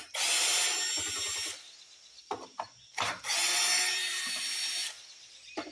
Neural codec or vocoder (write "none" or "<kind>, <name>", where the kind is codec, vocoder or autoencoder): none